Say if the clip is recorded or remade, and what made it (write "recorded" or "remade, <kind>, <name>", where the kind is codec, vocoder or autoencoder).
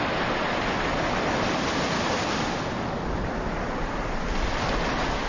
recorded